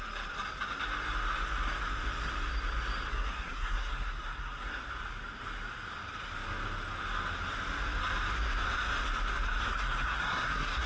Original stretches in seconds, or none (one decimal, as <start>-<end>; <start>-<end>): 0.0-3.1; 4.9-9.7